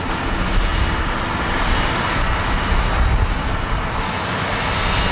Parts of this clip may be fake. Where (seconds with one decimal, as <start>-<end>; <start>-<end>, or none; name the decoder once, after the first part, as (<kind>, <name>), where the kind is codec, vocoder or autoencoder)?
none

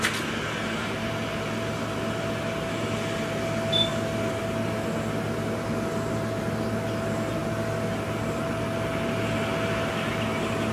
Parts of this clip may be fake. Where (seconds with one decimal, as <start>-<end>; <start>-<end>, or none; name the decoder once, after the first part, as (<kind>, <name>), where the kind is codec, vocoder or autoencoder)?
none

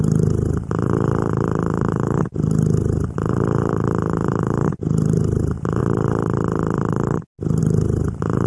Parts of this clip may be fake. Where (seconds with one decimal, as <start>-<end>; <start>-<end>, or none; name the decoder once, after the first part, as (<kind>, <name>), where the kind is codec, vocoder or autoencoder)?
0.0-5.8 (vocoder, BigVGAN v2); 7.6-8.5

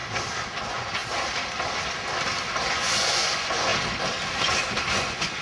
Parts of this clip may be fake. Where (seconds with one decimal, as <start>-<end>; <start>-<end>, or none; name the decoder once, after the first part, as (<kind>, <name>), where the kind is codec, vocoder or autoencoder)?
0.6-1.0 (vocoder, Vocos); 2.7-3.7; 4.9-5.4

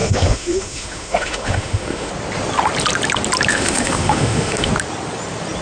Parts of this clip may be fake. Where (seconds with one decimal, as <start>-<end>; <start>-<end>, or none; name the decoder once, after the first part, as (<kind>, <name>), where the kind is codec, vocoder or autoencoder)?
0.0-2.1 (autoencoder, DAC-VAE); 3.5-4.7

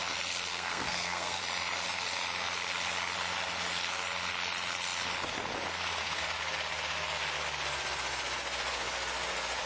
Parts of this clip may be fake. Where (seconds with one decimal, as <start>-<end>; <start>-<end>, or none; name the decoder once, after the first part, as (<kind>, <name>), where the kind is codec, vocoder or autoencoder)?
0.5-1.4 (codec, SNAC)

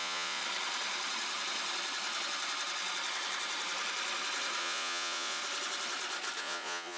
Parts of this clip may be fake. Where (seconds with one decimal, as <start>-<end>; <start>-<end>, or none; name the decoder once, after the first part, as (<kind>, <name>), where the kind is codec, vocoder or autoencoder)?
0.0-0.4 (vocoder, Vocos); 4.6-5.4; 6.4-7.0